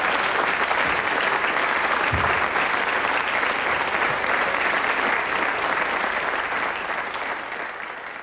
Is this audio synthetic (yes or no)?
no